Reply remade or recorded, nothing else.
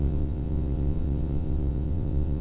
remade